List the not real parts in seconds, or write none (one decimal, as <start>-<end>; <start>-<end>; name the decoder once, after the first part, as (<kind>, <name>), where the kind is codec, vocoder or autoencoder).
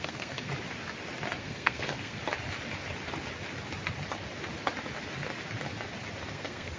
0.0-0.5 (codec, SNAC); 1.4-2.2; 6.3-6.8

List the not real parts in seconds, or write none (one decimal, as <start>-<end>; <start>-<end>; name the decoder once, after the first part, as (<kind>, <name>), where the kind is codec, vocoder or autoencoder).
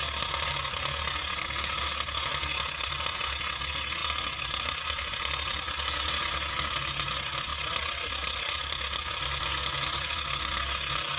none